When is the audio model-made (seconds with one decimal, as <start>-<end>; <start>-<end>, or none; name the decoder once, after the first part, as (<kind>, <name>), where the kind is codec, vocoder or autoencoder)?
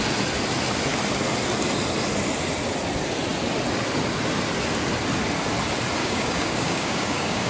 6.0-7.5 (codec, DAC)